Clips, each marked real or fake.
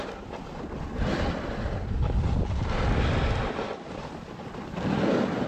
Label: real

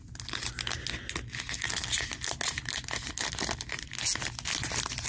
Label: real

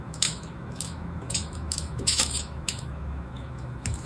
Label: fake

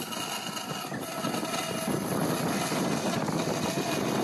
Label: real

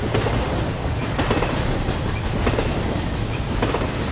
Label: real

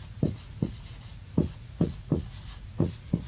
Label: fake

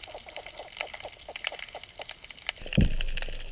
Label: real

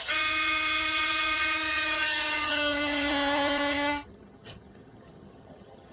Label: fake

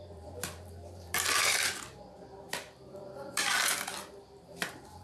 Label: fake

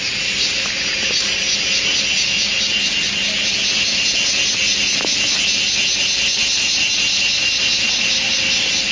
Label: real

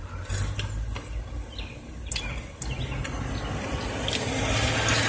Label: real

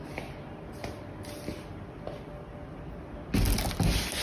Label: real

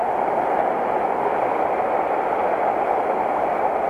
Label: real